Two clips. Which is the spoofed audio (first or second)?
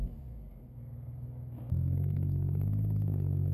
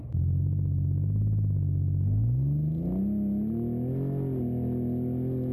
first